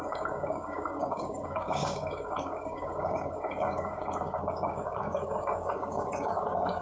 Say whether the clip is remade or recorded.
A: remade